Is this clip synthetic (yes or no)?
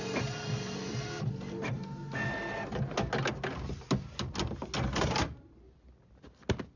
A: no